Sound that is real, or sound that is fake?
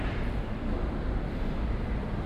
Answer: real